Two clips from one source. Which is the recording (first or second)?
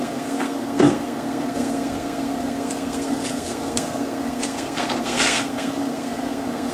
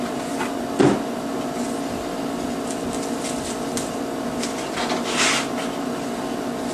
second